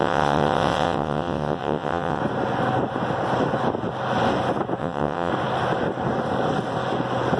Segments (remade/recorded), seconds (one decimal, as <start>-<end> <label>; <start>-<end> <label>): 0.0-2.2 remade; 2.2-4.8 recorded; 4.8-5.3 remade; 5.3-7.4 recorded